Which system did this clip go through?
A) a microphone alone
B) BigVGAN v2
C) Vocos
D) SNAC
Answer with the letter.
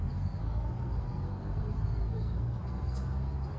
D